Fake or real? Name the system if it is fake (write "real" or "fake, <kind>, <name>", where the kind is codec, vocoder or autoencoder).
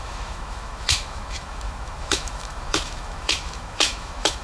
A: fake, autoencoder, DAC-VAE